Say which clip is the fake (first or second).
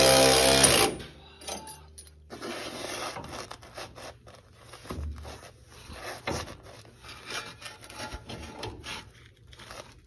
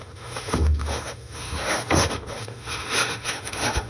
second